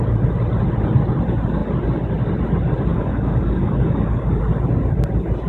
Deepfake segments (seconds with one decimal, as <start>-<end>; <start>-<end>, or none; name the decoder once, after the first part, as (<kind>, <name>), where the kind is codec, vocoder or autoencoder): 2.9-4.4 (codec, DAC)

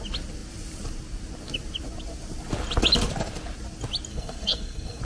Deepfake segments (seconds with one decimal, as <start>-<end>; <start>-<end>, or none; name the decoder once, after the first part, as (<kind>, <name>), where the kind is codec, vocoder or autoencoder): 4.1-5.0 (codec, SNAC)

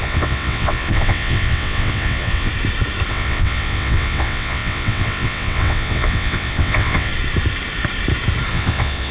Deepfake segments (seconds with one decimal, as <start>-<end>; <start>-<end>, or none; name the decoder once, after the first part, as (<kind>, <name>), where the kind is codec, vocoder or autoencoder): 0.0-2.5 (vocoder, WaveNeXt); 3.1-7.1; 8.5-9.1

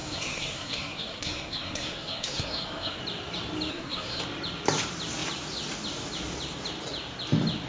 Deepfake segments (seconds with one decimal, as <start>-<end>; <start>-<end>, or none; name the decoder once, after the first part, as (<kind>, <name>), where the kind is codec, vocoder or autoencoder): 0.0-3.0 (codec, SNAC); 3.7-4.2

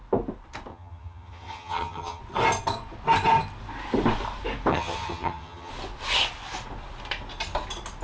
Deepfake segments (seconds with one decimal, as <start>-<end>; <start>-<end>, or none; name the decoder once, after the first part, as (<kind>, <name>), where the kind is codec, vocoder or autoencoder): 0.7-2.2 (vocoder, HiFi-GAN); 4.7-5.7

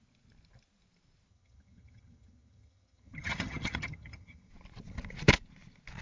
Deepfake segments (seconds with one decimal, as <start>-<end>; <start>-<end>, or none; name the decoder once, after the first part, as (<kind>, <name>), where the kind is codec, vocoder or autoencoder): 1.3-4.5 (vocoder, HiFi-GAN)

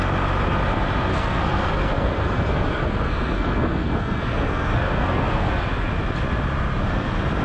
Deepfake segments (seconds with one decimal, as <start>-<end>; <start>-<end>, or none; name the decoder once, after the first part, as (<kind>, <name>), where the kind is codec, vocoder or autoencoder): 1.1-5.5 (codec, SNAC)

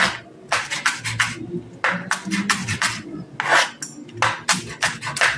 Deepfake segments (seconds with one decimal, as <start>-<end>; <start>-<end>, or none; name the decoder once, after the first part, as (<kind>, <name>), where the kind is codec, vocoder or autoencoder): 2.6-3.2 (vocoder, WaveNeXt)